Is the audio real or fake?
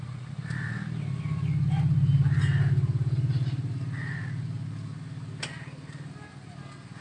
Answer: real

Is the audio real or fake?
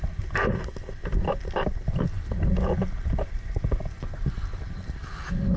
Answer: real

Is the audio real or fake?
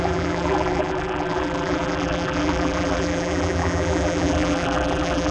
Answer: fake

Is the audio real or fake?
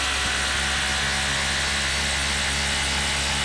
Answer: real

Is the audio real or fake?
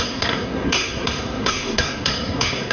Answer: fake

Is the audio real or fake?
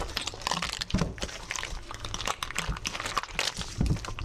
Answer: real